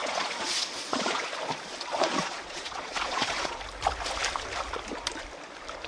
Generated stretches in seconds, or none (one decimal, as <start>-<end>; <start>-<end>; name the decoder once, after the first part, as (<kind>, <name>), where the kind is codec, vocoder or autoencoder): 0.0-1.3 (vocoder, Vocos); 1.9-3.6